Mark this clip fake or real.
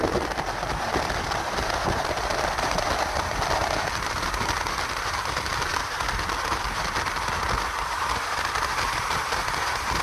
real